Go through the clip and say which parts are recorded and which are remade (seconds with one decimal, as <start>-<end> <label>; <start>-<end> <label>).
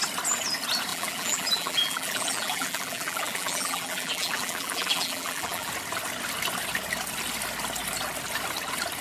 0.0-0.9 recorded; 0.9-5.7 remade; 5.7-9.0 recorded